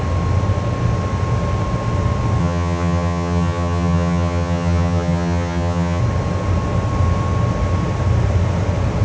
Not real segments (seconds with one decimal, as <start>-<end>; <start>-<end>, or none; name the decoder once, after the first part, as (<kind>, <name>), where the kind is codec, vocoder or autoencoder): 2.4-6.0 (vocoder, HiFi-GAN)